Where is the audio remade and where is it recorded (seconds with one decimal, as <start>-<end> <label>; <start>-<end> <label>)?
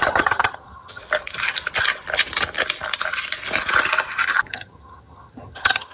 0.0-1.0 remade; 1.0-4.5 recorded; 4.5-5.9 remade